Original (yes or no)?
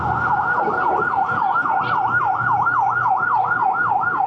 yes